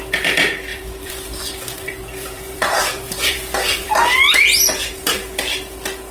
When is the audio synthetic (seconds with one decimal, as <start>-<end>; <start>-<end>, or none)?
0.7-4.1